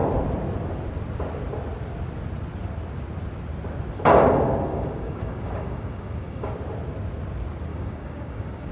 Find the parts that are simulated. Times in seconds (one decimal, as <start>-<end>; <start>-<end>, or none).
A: 4.7-6.5; 7.7-8.7